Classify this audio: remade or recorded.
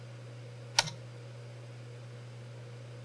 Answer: recorded